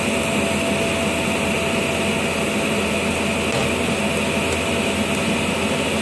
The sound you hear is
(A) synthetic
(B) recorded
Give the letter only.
B